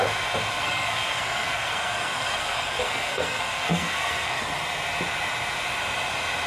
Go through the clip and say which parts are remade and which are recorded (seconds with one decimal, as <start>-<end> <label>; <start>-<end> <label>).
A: 0.0-0.5 recorded; 0.5-4.4 remade; 4.4-6.5 recorded